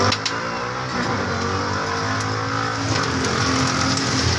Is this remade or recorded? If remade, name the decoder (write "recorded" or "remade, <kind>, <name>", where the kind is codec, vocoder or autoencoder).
recorded